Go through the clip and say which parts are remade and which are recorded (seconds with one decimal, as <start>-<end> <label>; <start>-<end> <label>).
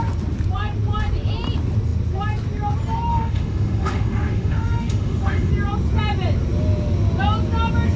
0.0-3.1 recorded; 3.1-5.5 remade; 5.5-8.0 recorded